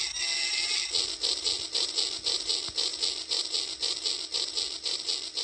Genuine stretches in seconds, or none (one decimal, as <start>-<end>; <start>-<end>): 0.0-5.4